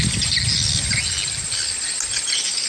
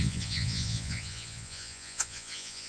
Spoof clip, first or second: second